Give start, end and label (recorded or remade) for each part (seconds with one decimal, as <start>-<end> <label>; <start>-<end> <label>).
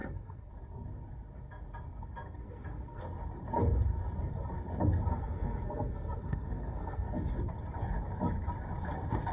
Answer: 0.0-0.5 remade; 0.5-2.4 recorded; 2.4-3.0 remade; 3.0-5.1 recorded; 5.1-7.1 remade; 7.1-9.3 recorded